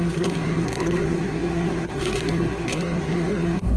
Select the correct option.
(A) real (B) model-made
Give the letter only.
B